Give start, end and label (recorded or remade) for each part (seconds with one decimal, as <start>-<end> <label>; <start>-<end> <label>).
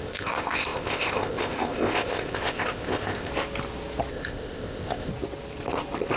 0.0-3.3 remade; 3.3-4.1 recorded; 4.1-5.1 remade; 5.1-6.2 recorded